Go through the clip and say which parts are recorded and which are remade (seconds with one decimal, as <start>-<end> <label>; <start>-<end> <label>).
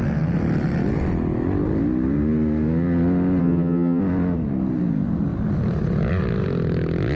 0.0-3.4 recorded; 3.4-4.0 remade; 4.0-7.2 recorded